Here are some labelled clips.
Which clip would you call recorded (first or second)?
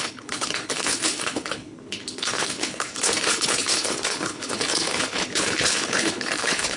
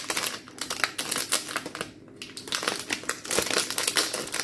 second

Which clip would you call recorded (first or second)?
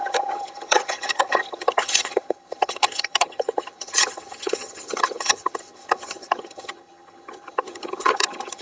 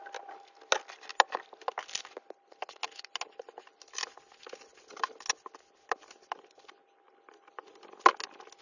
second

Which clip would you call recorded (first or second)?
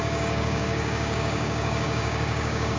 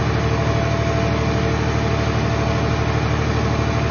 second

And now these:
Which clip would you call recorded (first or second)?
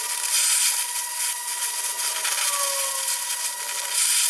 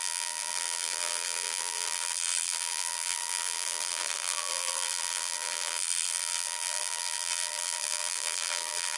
first